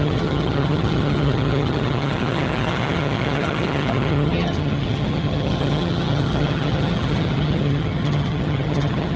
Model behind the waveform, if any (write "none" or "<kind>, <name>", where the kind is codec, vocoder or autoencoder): vocoder, HiFi-GAN